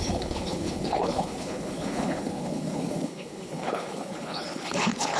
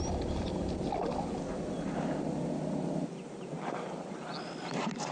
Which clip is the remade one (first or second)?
first